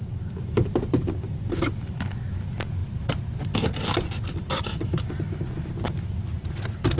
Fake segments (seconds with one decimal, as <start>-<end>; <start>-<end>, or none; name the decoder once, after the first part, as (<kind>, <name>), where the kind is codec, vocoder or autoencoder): 2.8-7.0 (vocoder, BigVGAN v2)

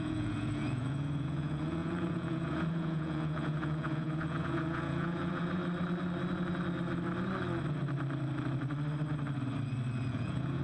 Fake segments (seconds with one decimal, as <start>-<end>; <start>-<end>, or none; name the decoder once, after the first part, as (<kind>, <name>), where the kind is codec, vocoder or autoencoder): 0.0-5.6 (vocoder, Vocos); 10.1-10.6

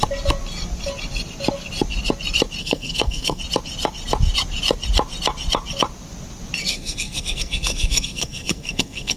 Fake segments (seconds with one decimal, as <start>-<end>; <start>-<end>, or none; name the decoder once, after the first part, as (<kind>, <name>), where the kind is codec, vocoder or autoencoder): 2.6-3.4 (codec, SNAC); 6.6-9.2